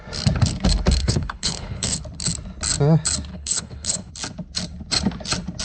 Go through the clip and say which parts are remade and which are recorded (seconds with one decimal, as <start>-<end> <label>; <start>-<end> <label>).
0.0-1.0 recorded; 1.0-2.0 remade; 2.0-3.3 recorded; 3.3-4.1 remade; 4.1-5.6 recorded